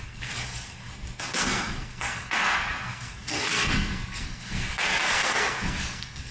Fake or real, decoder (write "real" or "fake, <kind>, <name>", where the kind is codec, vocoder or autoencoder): fake, codec, SNAC